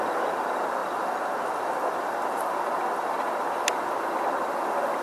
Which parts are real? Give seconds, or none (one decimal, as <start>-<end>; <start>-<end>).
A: 0.0-5.0